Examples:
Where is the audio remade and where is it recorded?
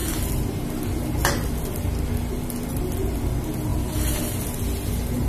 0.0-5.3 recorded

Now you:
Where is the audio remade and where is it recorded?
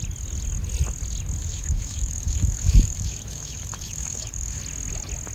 0.0-1.4 recorded; 1.4-4.6 remade; 4.6-5.3 recorded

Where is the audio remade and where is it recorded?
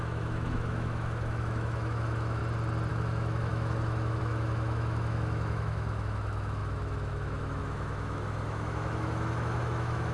0.0-2.4 remade; 2.4-2.9 recorded; 2.9-10.1 remade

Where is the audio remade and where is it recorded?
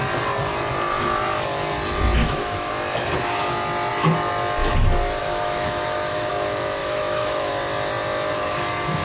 0.0-2.2 recorded; 2.2-2.7 remade; 2.7-5.2 recorded; 5.2-6.3 remade; 6.3-6.8 recorded; 6.8-7.5 remade; 7.5-9.0 recorded